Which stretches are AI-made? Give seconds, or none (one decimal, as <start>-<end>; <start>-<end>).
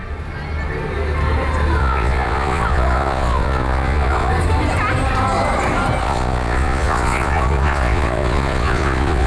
1.8-4.3; 6.0-9.3